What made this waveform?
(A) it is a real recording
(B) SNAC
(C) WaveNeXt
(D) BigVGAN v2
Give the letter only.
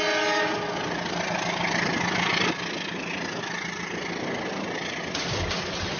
A